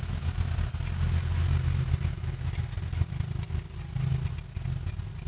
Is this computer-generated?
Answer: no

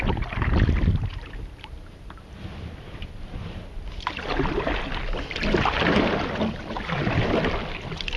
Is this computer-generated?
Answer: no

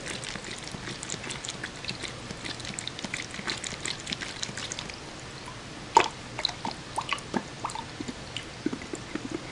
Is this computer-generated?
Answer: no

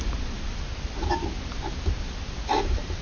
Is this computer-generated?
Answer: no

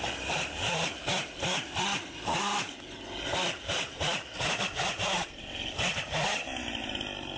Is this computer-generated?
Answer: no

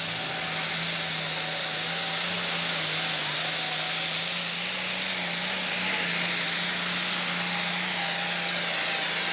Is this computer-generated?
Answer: no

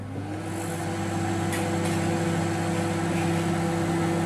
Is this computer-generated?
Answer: no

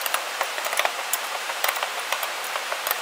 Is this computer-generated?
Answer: yes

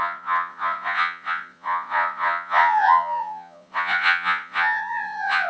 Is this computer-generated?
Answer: yes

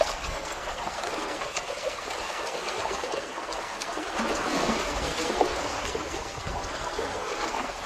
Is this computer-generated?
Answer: yes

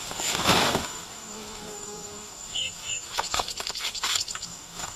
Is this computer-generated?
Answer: yes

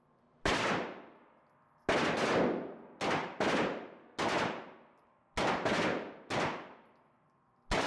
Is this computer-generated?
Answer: no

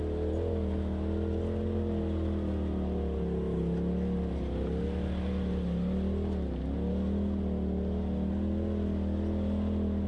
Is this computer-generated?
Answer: no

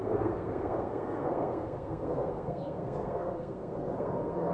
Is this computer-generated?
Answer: yes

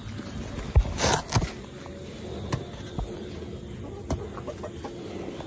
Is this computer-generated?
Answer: no